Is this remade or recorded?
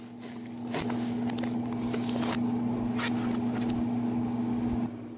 recorded